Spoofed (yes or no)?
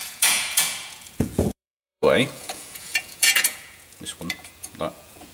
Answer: yes